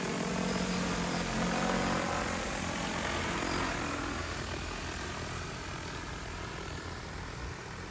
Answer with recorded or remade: recorded